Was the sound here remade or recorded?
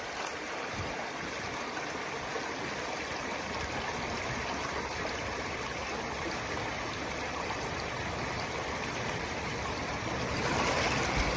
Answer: recorded